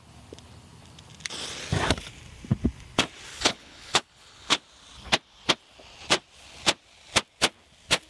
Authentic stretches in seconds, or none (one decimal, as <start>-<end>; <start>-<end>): 0.0-3.3; 4.6-8.1